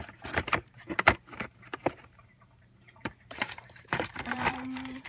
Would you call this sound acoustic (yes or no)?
no